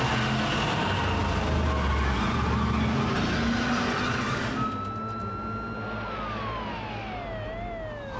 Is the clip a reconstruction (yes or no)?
no